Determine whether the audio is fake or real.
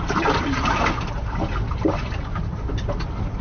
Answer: real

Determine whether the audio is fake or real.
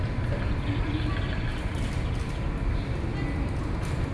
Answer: real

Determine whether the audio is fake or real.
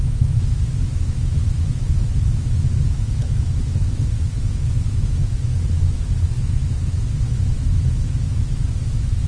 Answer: fake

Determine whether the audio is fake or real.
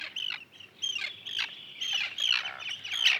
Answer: real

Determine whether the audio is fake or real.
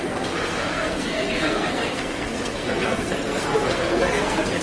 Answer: fake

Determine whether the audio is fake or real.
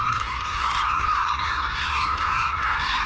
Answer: fake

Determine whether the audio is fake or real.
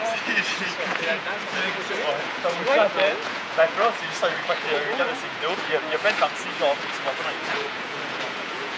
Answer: fake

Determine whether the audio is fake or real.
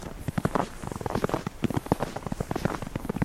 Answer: fake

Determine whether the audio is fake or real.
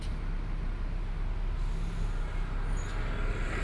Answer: real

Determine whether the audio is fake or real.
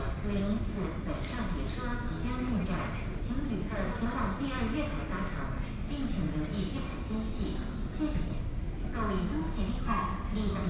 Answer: real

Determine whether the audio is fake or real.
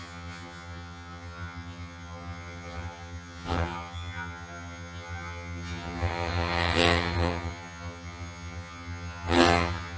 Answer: fake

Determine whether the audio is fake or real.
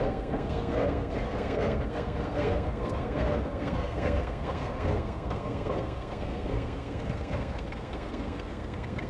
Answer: fake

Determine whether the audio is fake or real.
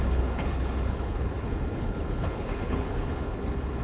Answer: fake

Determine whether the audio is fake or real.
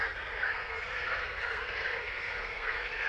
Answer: fake